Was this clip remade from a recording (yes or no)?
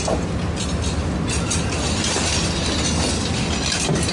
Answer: no